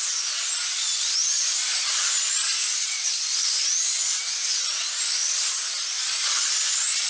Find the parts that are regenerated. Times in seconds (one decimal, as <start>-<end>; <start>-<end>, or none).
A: none

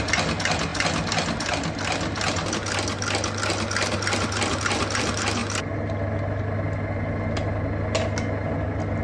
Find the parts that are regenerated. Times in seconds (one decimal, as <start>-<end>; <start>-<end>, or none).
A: none

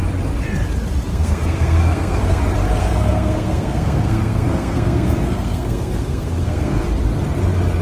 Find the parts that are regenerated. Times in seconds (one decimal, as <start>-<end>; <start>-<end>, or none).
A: 1.1-2.4; 2.8-6.8